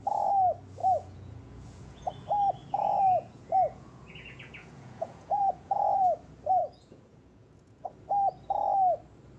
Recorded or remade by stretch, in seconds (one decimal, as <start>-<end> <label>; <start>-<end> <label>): 0.0-0.8 recorded; 0.8-2.1 remade; 2.1-2.6 recorded; 2.6-6.0 remade; 6.0-6.6 recorded; 6.6-7.9 remade; 7.9-9.4 recorded